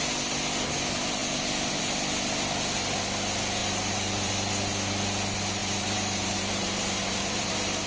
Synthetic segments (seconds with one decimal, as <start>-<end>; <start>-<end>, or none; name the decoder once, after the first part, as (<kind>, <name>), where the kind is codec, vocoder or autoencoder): 3.6-4.3 (vocoder, BigVGAN v2); 5.6-7.5